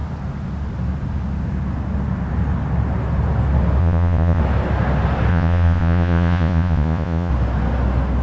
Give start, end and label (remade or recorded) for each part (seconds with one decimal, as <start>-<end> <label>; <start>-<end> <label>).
0.0-3.8 recorded; 3.8-4.4 remade; 4.4-5.3 recorded; 5.3-7.3 remade; 7.3-8.2 recorded